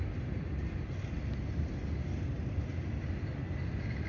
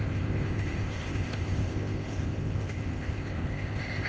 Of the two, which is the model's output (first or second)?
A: second